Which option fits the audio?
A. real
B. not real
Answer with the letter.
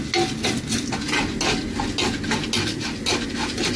A